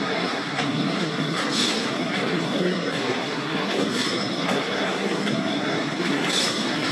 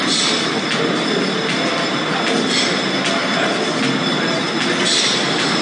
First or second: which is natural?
second